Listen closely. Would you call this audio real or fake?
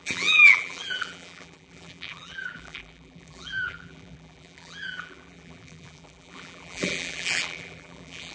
fake